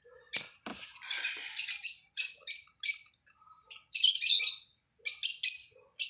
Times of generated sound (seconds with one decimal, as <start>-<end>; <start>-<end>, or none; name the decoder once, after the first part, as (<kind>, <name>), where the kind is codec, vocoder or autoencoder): none